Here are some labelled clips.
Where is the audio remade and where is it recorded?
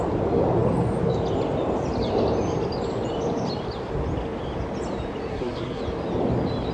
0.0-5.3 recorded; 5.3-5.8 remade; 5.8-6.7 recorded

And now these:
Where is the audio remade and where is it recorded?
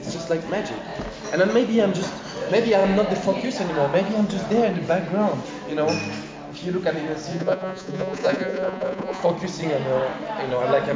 0.0-7.3 recorded; 7.3-9.2 remade; 9.2-11.0 recorded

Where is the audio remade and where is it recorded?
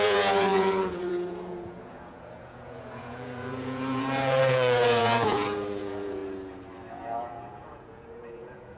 0.0-6.2 remade; 6.2-6.9 recorded; 6.9-8.8 remade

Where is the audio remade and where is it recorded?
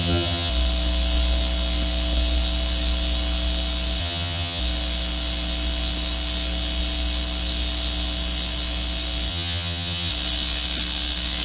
0.0-0.5 remade; 0.5-4.0 recorded; 4.0-4.6 remade; 4.6-9.3 recorded; 9.3-10.1 remade; 10.1-11.4 recorded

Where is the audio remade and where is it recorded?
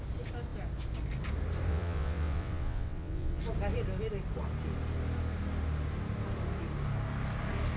0.0-1.7 recorded; 1.7-3.4 remade; 3.4-7.8 recorded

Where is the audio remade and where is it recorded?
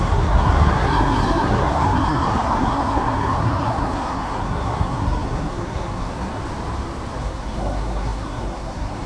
0.0-6.4 remade; 6.4-7.2 recorded; 7.2-9.1 remade